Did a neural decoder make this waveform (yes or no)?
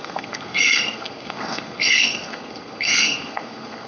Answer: yes